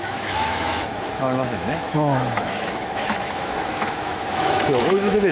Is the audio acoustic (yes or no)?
no